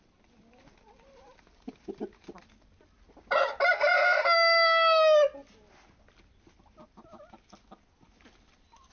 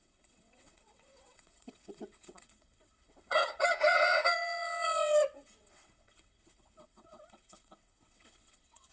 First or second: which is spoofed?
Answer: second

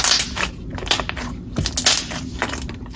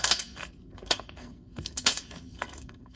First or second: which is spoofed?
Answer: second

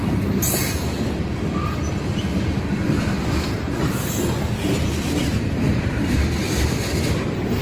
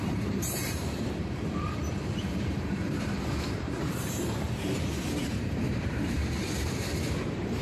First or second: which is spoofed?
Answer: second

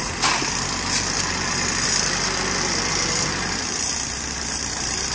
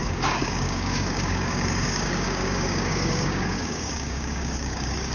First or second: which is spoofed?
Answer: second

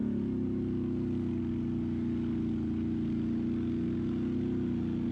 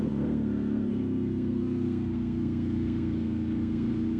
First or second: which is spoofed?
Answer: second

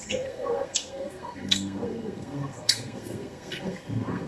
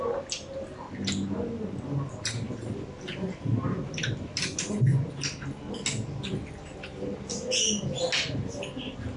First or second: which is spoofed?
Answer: first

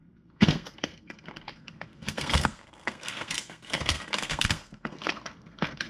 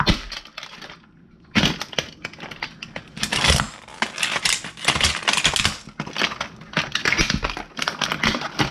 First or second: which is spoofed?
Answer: first